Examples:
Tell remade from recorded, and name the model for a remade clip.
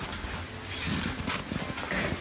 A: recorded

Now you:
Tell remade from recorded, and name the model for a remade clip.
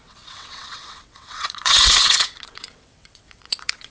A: remade, vocoder, WaveNeXt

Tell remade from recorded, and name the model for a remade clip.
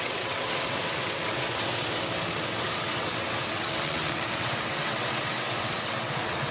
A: remade, vocoder, WaveNeXt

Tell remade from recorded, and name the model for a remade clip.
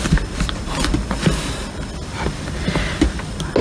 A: recorded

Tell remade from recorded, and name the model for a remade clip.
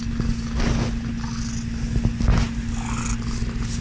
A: recorded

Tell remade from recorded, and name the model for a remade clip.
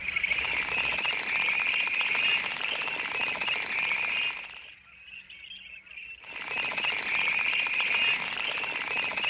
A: recorded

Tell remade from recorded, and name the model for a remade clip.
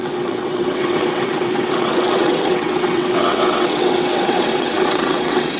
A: remade, vocoder, WaveNeXt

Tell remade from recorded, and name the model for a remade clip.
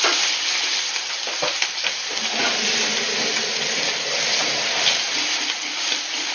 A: recorded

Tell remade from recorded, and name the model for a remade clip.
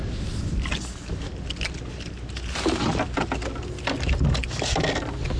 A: recorded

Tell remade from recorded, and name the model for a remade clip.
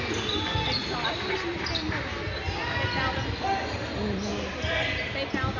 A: recorded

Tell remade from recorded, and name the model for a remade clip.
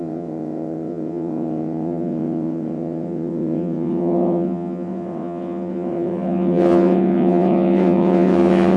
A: remade, vocoder, WaveNeXt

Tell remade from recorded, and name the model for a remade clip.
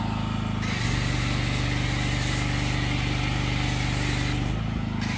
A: recorded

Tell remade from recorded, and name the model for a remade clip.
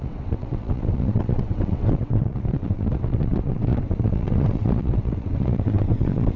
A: remade, vocoder, WaveNeXt